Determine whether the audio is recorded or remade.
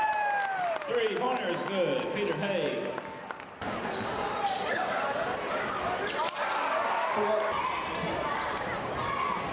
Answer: recorded